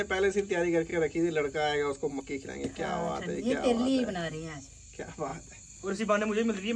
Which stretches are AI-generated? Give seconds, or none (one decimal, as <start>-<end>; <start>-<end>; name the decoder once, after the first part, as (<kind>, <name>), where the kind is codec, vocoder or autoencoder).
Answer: none

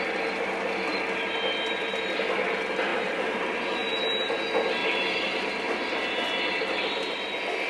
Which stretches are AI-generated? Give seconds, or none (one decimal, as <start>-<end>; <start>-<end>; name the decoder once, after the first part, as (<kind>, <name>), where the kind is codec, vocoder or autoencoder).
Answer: 2.9-4.3 (vocoder, BigVGAN v2); 4.8-5.5

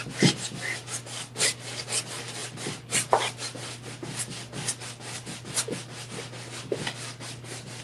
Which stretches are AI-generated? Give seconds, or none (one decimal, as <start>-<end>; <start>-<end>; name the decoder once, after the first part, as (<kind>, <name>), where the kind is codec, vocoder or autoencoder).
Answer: none